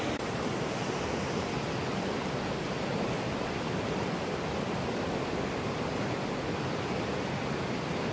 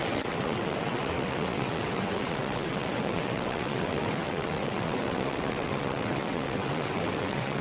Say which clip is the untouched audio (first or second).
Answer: first